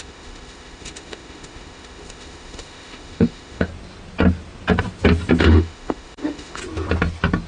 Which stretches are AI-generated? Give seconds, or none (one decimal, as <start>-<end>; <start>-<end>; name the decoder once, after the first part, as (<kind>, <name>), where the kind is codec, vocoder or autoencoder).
0.0-3.7 (autoencoder, DAC-VAE); 5.4-6.6